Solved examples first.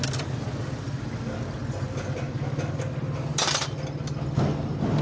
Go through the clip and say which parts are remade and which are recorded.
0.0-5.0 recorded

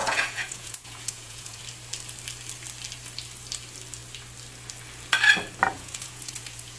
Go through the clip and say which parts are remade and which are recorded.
0.0-1.6 remade; 1.6-5.7 recorded; 5.7-6.8 remade

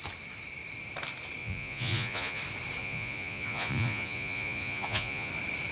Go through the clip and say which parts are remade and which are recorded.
0.0-1.4 recorded; 1.4-2.4 remade; 2.4-2.8 recorded; 2.8-5.3 remade; 5.3-5.7 recorded

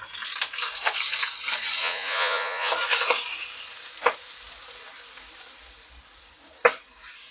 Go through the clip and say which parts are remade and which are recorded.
0.0-1.8 recorded; 1.8-2.7 remade; 2.7-7.3 recorded

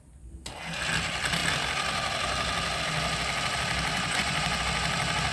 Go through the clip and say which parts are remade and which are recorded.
0.0-3.9 recorded; 3.9-4.6 remade; 4.6-5.3 recorded